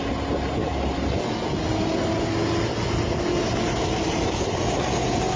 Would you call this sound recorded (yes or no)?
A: yes